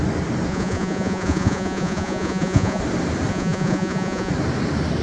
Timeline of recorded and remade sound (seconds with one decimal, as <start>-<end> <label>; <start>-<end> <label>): 0.0-0.5 recorded; 0.5-2.8 remade; 2.8-3.3 recorded; 3.3-4.3 remade; 4.3-5.0 recorded